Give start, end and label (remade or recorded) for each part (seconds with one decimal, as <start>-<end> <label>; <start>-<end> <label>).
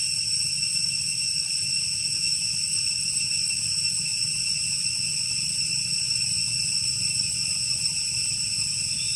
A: 0.0-4.1 recorded; 4.1-7.8 remade; 7.8-9.2 recorded